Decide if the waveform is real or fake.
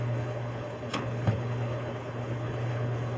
fake